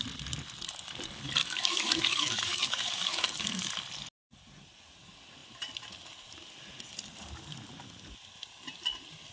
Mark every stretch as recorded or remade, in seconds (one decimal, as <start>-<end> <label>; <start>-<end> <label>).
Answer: 0.0-1.4 recorded; 1.4-3.7 remade; 3.7-9.3 recorded